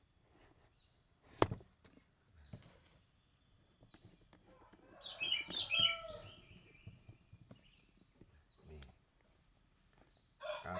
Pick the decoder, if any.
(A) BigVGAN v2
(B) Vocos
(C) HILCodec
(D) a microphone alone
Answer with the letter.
D